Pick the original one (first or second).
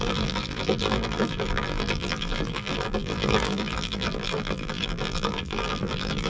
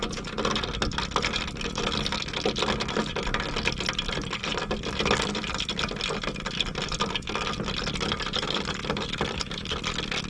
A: second